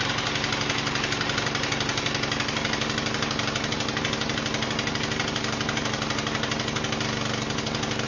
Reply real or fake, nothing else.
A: real